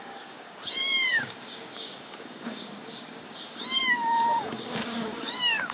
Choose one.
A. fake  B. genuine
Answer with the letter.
A